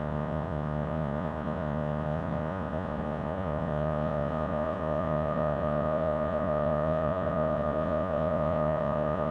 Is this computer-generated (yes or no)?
yes